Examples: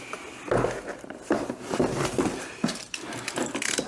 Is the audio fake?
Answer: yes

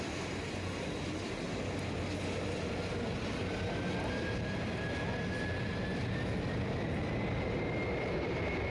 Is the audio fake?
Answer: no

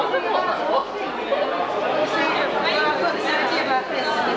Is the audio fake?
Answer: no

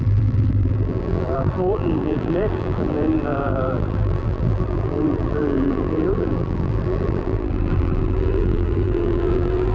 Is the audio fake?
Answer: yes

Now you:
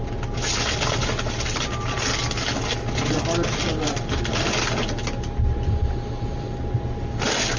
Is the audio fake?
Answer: no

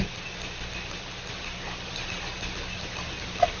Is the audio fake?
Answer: no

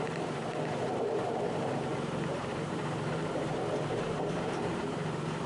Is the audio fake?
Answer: yes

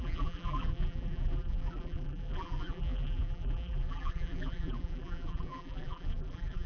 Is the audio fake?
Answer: yes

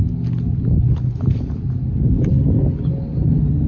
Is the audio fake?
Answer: no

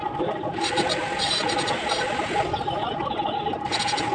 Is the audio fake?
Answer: no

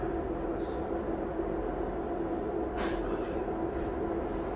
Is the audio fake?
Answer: no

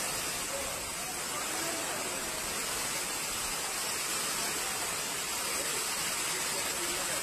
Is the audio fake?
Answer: no